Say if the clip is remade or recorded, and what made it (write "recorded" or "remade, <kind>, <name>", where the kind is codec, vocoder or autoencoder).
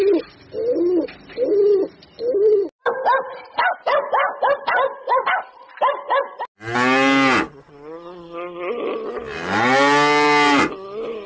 recorded